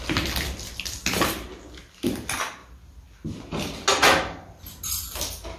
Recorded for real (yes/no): yes